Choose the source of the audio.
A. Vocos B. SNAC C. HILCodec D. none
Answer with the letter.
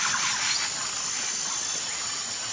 D